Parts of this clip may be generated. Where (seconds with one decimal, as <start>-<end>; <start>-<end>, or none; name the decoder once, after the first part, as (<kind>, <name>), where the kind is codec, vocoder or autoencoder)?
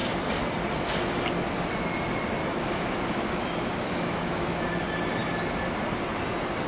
2.4-4.6 (autoencoder, DAC-VAE)